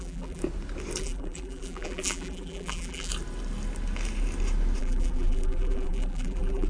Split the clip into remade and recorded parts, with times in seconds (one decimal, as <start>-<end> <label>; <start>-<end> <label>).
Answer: 0.0-0.4 remade; 0.4-1.0 recorded; 1.0-3.1 remade; 3.1-4.8 recorded; 4.8-6.7 remade